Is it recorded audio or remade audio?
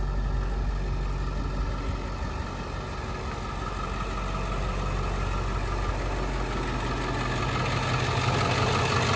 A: recorded